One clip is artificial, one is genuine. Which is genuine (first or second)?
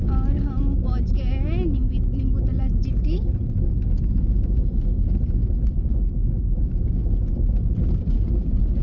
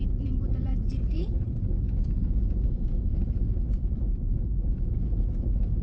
first